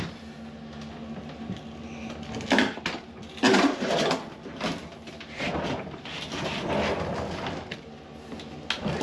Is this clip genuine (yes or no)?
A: yes